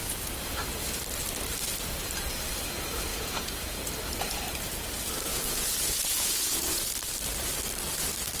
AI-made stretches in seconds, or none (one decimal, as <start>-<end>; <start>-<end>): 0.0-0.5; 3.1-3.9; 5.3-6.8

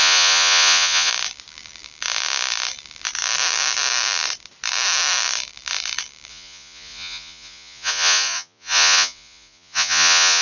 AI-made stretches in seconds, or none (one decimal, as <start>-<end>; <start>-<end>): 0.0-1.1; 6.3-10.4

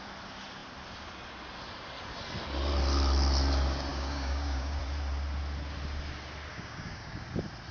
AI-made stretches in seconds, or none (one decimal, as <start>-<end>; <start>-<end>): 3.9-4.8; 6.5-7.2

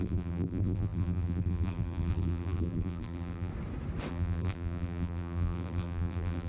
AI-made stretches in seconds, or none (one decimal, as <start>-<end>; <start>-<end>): 0.0-3.5; 4.1-6.5

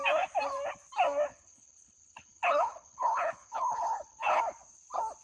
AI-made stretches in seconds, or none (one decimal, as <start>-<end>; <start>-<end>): 1.3-4.4

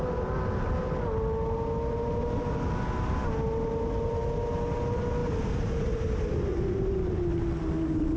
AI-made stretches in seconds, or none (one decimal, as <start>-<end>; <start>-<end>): none